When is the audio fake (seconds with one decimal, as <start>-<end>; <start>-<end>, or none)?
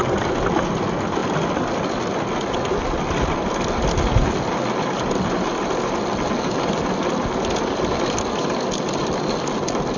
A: none